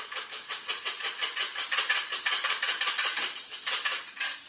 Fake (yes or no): no